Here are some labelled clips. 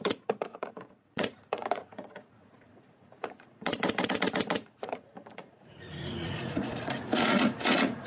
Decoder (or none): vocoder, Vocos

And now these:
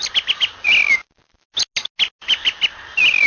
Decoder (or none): none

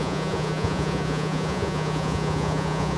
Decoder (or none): vocoder, Vocos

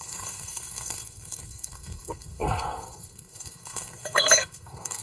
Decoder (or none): codec, SNAC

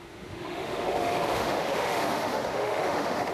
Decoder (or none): autoencoder, DAC-VAE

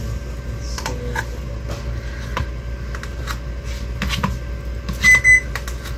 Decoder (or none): none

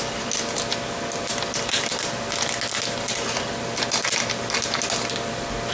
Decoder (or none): none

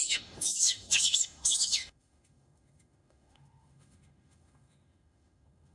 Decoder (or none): autoencoder, DAC-VAE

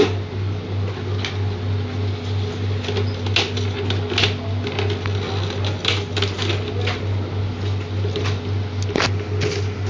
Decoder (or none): none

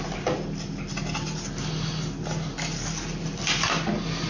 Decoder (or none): none